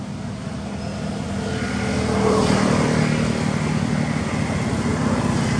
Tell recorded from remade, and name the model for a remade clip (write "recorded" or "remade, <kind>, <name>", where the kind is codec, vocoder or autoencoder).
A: recorded